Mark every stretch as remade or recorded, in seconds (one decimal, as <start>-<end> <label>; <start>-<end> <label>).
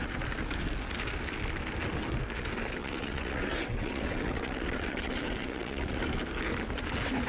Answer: 0.0-2.8 recorded; 2.8-6.0 remade; 6.0-7.3 recorded